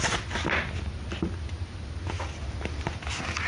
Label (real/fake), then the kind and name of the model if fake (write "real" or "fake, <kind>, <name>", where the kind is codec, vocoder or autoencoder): real